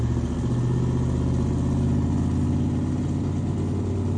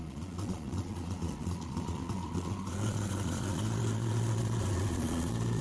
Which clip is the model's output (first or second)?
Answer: second